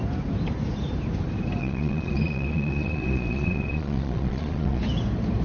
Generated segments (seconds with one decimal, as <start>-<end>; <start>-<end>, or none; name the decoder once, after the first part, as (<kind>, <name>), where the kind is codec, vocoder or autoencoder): 1.6-4.8 (vocoder, Vocos)